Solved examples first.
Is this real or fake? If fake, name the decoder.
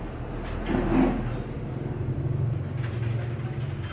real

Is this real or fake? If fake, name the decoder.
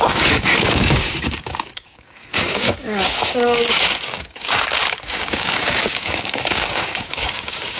fake, codec, DAC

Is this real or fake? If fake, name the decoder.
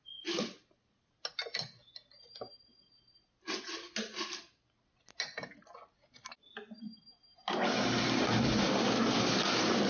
real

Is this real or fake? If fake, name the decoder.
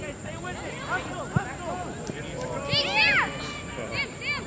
real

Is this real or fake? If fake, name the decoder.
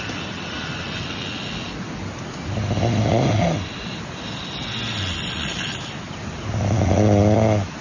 real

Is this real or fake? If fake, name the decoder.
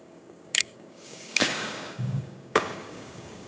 fake, codec, DAC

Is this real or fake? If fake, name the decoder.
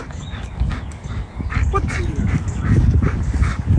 fake, codec, DAC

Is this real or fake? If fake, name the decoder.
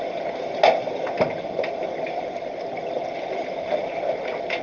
real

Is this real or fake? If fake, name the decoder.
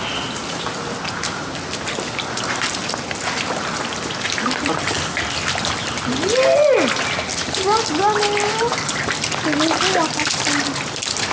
real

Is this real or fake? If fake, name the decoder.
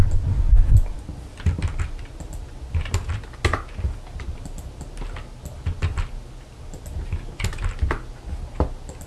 real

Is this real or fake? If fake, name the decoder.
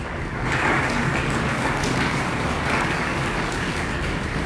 fake, codec, DAC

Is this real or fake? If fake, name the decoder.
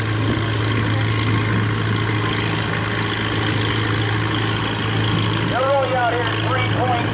real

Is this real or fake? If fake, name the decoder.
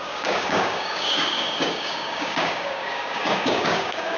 fake, codec, DAC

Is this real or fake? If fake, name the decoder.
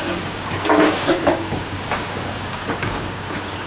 fake, codec, DAC